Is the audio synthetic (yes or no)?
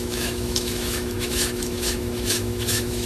yes